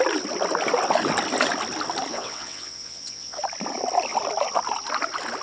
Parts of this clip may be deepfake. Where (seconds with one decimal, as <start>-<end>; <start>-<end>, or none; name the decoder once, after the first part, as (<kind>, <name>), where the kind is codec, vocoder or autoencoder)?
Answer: 2.1-3.4 (vocoder, WaveNeXt)